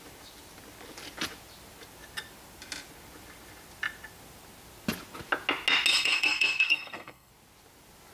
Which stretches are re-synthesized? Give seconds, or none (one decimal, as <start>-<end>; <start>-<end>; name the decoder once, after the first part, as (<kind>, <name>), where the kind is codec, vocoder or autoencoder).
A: 5.9-7.3 (codec, SNAC)